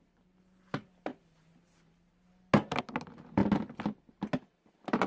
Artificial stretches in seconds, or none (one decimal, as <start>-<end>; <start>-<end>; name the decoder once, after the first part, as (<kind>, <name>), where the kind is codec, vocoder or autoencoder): none